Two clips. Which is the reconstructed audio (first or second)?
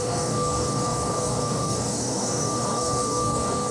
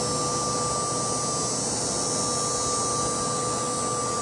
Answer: first